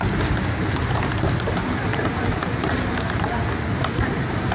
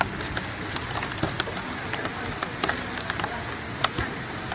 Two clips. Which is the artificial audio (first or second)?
first